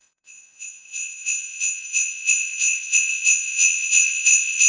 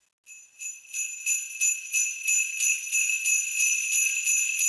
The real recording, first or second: second